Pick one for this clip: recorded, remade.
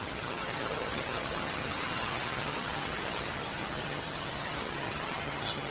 remade